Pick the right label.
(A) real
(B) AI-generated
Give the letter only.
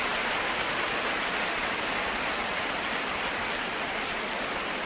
A